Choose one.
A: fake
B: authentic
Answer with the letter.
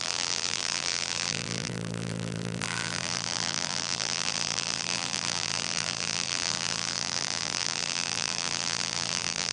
A